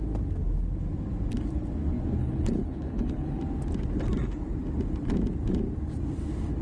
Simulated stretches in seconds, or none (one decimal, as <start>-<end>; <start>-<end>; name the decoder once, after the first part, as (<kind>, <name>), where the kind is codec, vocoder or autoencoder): 2.2-3.4 (codec, HILCodec)